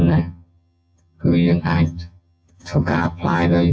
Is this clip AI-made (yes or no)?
yes